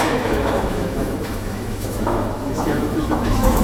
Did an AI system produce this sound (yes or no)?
yes